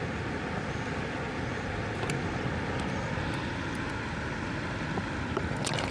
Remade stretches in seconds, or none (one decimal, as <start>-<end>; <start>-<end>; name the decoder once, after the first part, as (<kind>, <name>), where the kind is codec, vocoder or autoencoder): none